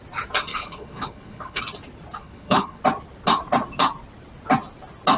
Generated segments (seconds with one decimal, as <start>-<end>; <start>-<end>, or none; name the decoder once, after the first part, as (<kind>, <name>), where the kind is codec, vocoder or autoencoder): 0.5-1.6 (codec, HILCodec); 2.2-2.8